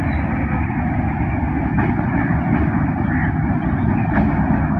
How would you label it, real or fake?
real